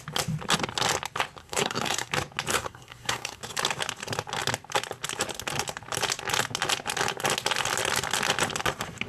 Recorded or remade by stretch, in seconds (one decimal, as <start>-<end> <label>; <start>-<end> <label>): 0.0-1.4 recorded; 1.4-2.1 remade; 2.1-2.5 recorded; 2.5-3.4 remade; 3.4-9.1 recorded